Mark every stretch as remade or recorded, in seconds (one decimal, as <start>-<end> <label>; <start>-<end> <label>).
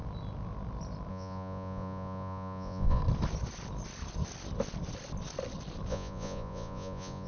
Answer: 0.0-1.1 recorded; 1.1-3.0 remade; 3.0-5.9 recorded; 5.9-7.3 remade